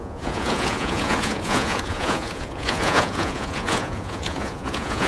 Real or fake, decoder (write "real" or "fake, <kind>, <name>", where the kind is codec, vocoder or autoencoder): fake, vocoder, Vocos